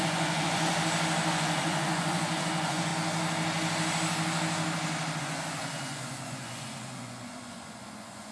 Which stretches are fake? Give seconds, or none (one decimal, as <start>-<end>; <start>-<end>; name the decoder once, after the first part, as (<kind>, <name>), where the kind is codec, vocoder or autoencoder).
0.0-0.7 (vocoder, Vocos); 1.3-2.9; 5.2-8.3